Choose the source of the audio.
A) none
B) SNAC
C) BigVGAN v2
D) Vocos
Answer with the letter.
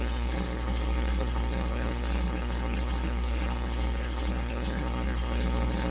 B